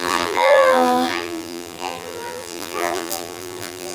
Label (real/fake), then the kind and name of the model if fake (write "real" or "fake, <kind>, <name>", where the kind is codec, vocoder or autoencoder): fake, vocoder, BigVGAN v2